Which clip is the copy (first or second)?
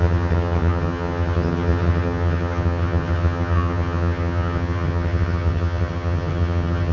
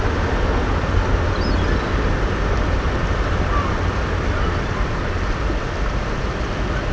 first